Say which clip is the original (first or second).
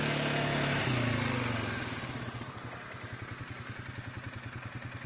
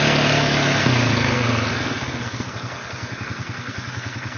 first